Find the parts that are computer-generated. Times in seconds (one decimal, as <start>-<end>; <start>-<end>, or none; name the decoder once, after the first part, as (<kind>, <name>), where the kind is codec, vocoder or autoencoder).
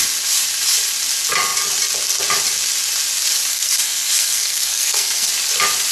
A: 3.5-5.3 (codec, SNAC)